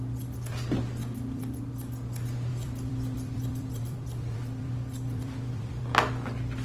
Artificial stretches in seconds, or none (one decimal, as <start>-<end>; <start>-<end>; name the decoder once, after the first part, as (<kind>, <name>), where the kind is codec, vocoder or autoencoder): 1.0-1.6 (vocoder, BigVGAN v2); 2.5-5.8